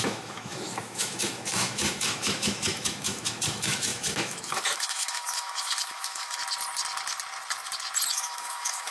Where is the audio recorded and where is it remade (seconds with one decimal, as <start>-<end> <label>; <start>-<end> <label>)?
0.0-6.4 remade; 6.4-8.1 recorded; 8.1-8.9 remade